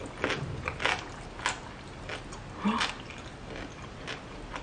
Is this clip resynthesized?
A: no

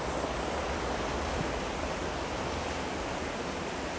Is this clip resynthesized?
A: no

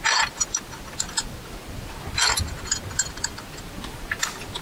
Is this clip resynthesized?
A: no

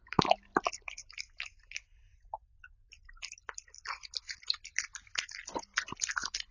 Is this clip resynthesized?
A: no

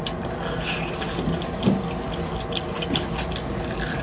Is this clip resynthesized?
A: no